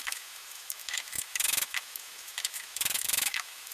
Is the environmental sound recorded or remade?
remade